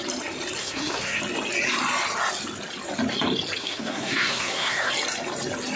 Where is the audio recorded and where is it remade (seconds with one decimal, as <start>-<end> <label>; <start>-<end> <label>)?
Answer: 0.0-0.6 recorded; 0.6-1.2 remade; 1.2-3.6 recorded; 3.6-4.9 remade; 4.9-5.8 recorded